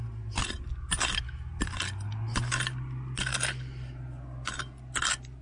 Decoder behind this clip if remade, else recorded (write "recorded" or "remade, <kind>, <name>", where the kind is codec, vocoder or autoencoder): recorded